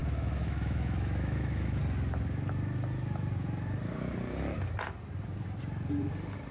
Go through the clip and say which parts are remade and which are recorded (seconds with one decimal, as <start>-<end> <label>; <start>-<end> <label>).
0.0-1.8 remade; 1.8-6.5 recorded